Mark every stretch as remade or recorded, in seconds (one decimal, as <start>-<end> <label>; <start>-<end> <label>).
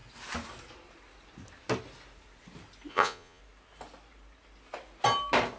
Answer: 0.0-2.9 recorded; 2.9-3.4 remade; 3.4-5.6 recorded